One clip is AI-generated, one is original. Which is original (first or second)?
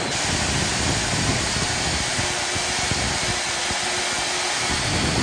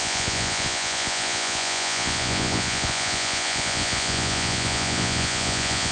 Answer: first